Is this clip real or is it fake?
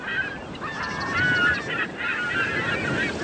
real